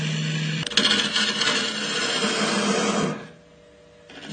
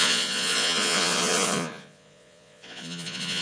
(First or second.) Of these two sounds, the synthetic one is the second